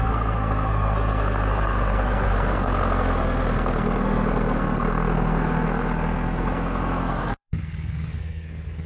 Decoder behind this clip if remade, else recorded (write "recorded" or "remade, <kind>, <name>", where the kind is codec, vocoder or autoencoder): remade, codec, SNAC